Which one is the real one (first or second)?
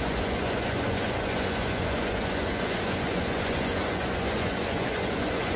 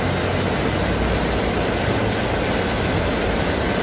second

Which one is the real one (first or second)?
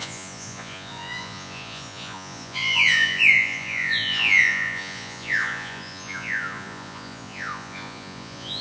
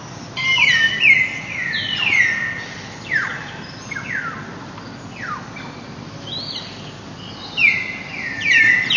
second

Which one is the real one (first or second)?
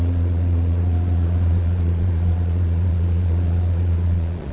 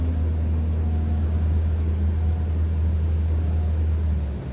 second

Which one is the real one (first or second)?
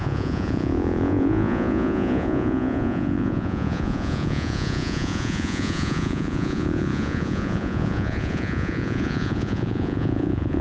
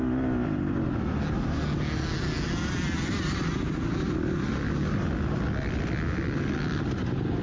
second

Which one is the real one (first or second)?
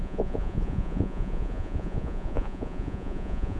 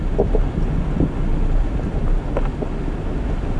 second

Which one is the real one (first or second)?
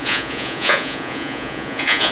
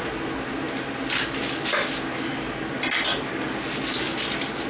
second